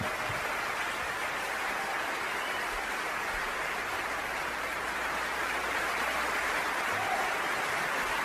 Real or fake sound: real